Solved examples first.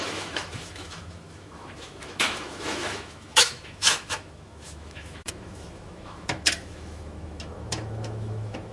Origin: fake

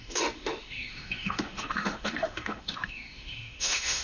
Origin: fake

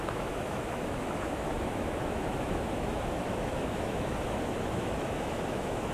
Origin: fake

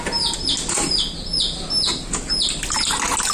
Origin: real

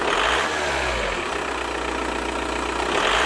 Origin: real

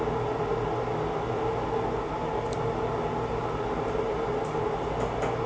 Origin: real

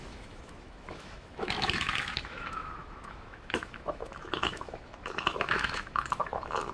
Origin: fake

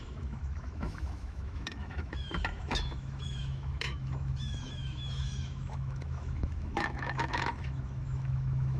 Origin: fake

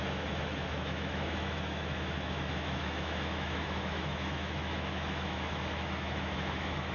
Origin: fake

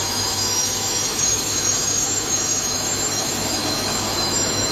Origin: fake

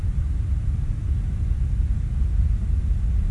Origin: real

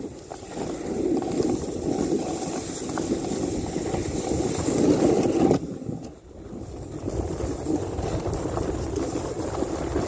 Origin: real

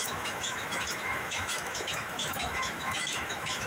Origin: fake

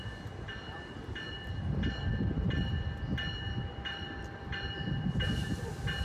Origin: real